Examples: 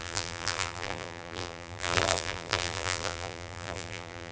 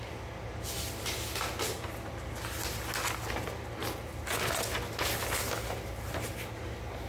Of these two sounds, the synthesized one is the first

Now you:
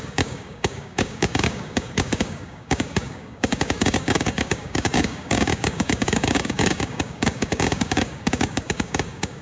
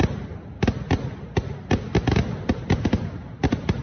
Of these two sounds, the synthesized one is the first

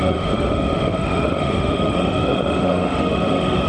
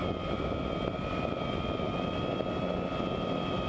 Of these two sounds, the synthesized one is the first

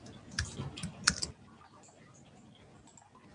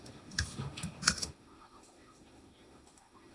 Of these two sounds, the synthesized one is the second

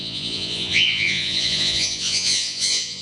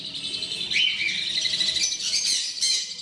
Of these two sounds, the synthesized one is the first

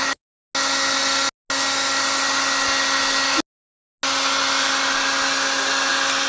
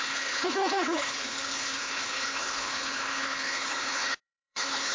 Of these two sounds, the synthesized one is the second